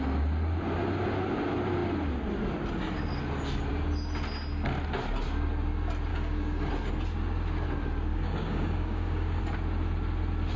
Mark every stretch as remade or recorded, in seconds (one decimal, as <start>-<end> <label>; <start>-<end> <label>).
0.0-6.1 recorded; 6.1-6.7 remade; 6.7-8.1 recorded; 8.1-9.4 remade; 9.4-10.6 recorded